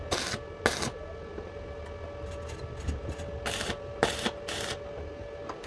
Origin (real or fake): real